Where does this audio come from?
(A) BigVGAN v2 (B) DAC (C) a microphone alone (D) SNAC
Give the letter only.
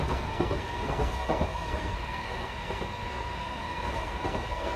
D